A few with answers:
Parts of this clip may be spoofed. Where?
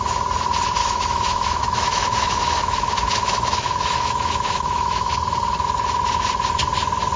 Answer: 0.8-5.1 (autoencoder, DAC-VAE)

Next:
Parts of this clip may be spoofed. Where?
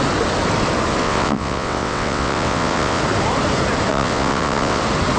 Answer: 1.0-3.0 (vocoder, WaveNeXt); 3.9-4.8